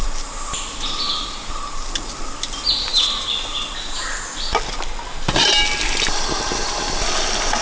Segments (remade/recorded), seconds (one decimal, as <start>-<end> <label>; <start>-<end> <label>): 0.0-7.6 recorded